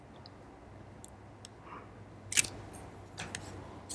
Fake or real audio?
real